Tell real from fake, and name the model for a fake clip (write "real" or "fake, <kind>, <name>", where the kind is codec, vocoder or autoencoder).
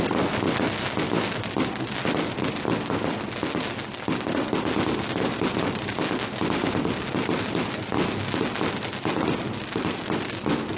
real